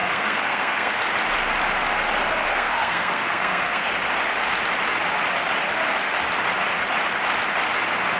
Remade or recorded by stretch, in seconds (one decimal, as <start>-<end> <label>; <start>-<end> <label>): 0.0-0.9 remade; 0.9-2.5 recorded; 2.5-3.9 remade; 3.9-8.2 recorded